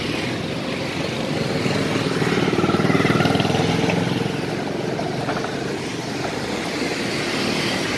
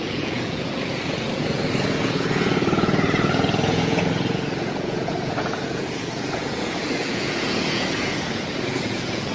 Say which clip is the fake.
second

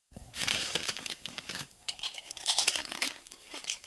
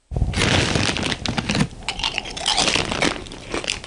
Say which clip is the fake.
first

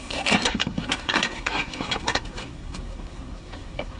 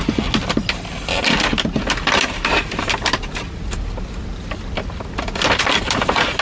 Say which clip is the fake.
first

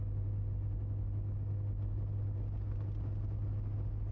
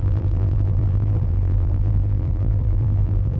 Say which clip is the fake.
second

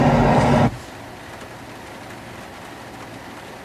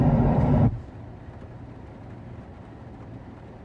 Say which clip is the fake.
second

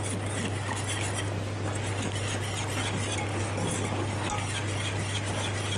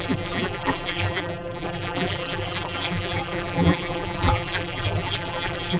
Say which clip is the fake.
second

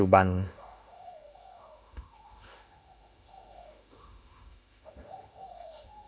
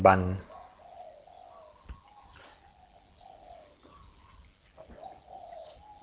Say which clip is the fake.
first